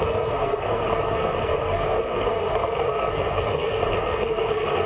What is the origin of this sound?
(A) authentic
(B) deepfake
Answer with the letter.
B